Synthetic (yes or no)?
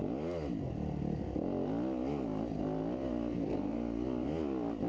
no